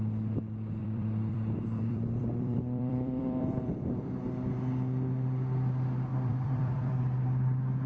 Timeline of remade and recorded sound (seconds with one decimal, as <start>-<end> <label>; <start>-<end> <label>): 0.0-0.8 recorded; 0.8-4.2 remade; 4.2-6.1 recorded; 6.1-7.0 remade; 7.0-7.9 recorded